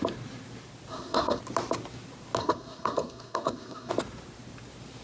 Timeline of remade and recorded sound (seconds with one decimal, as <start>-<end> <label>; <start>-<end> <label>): 0.0-0.9 recorded; 0.9-1.4 remade; 1.4-2.4 recorded; 2.4-3.9 remade; 3.9-5.0 recorded